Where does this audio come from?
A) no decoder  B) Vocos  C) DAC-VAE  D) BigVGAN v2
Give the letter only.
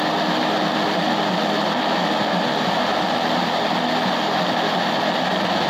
A